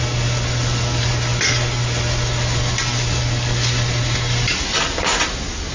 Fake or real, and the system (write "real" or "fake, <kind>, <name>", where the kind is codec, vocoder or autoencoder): real